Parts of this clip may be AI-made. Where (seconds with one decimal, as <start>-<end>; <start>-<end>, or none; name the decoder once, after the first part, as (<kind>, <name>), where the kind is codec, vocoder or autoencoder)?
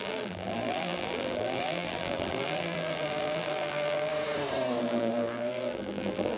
0.0-4.1 (vocoder, BigVGAN v2); 4.8-6.4